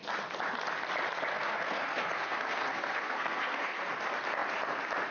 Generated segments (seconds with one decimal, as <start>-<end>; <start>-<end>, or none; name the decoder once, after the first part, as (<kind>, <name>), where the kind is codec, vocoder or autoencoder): 1.3-3.9 (codec, SNAC)